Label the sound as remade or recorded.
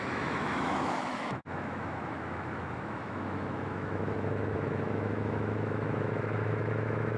remade